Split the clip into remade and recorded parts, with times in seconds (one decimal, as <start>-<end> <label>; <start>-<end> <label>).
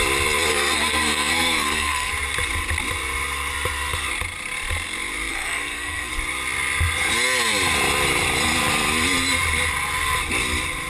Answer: 0.0-0.5 recorded; 0.5-2.1 remade; 2.1-5.3 recorded; 5.3-6.1 remade; 6.1-10.9 recorded